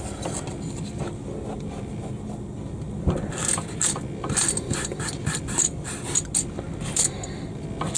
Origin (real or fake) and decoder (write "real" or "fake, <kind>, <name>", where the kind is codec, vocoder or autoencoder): real